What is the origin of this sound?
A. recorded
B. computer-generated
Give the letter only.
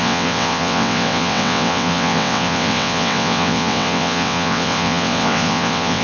B